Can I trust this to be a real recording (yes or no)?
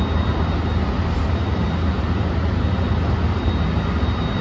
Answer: yes